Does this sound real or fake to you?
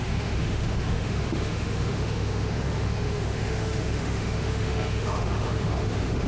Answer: fake